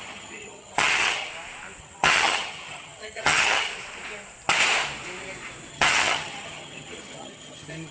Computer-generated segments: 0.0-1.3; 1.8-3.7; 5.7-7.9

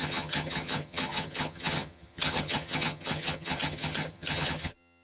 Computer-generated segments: 0.0-5.0

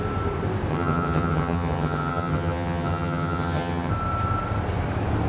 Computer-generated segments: 0.7-3.9

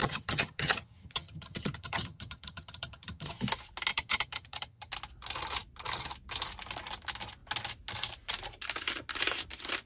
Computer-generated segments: 0.0-3.4; 3.9-4.9

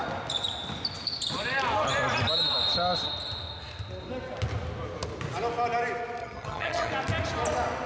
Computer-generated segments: 6.2-6.9